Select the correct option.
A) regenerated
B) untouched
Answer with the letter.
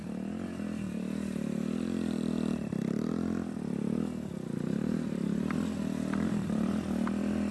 B